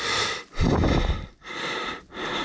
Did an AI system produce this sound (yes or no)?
yes